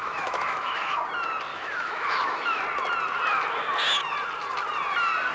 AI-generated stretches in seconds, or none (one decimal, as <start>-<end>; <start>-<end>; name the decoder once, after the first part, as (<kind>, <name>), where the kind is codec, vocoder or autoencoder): 0.0-1.0 (autoencoder, DAC-VAE); 1.5-2.6